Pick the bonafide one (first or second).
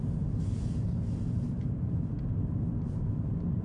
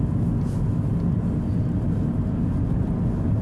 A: second